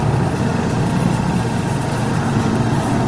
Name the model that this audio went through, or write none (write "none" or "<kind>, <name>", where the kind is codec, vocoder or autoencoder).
none